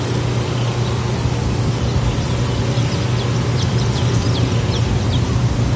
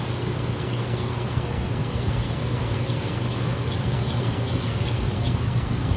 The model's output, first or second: second